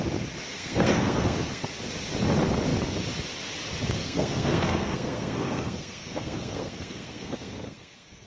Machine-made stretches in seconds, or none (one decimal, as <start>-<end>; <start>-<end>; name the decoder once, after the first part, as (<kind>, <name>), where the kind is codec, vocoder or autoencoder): 0.5-1.6 (codec, SNAC); 4.0-8.3